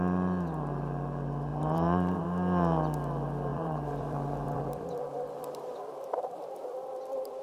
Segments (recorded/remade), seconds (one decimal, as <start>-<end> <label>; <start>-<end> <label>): 0.0-1.5 recorded; 1.5-2.2 remade; 2.2-3.5 recorded; 3.5-4.6 remade; 4.6-7.4 recorded